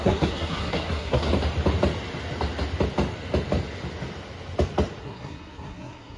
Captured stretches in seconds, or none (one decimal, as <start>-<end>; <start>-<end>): 1.3-5.0